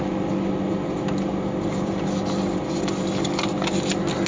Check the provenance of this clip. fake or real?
real